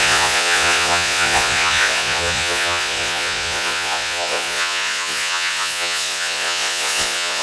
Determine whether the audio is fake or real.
fake